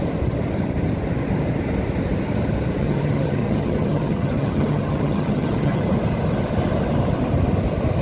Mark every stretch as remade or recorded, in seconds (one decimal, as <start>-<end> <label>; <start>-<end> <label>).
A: 0.0-2.8 recorded; 2.8-5.8 remade; 5.8-8.0 recorded